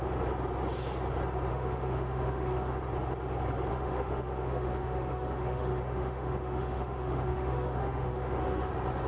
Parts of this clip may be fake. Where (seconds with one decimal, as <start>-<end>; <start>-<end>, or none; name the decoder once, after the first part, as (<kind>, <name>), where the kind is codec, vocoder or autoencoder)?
1.5-2.8 (autoencoder, DAC-VAE); 3.7-8.7